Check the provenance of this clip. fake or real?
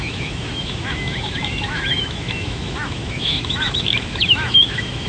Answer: fake